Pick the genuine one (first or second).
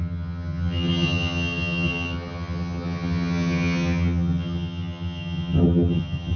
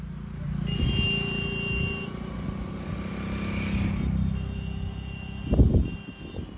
second